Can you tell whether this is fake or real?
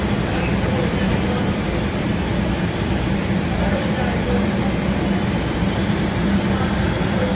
fake